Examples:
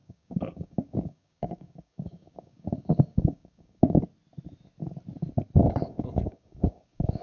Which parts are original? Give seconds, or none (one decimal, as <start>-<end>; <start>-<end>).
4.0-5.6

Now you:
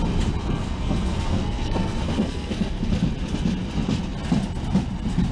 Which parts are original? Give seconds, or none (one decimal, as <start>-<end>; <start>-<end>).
0.0-0.4; 2.8-5.3

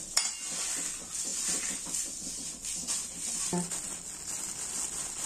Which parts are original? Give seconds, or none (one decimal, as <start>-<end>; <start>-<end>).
0.0-5.3

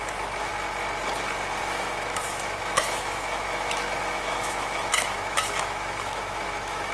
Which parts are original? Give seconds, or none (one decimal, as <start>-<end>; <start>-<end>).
0.5-1.6

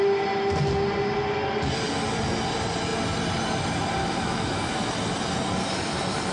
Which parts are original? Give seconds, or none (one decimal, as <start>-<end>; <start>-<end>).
0.0-4.0; 4.9-6.3

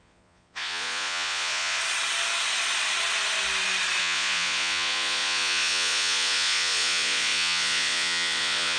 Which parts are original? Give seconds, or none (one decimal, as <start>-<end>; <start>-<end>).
1.8-4.0

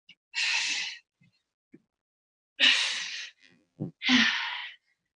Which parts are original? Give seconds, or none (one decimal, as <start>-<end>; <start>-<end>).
0.0-3.4; 3.9-5.2